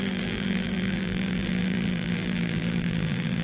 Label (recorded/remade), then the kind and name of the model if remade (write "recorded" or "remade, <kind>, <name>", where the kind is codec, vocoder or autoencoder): remade, vocoder, BigVGAN v2